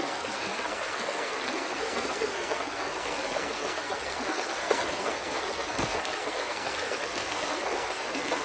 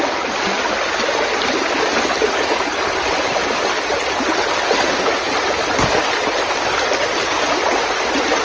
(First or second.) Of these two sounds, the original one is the second